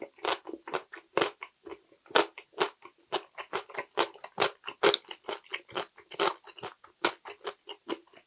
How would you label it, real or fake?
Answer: real